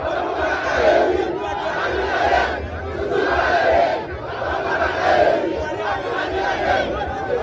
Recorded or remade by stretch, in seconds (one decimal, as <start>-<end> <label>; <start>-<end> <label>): 0.0-7.4 recorded